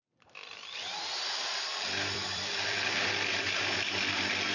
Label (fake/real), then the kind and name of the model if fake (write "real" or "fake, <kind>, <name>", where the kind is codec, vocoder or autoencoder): fake, vocoder, BigVGAN v2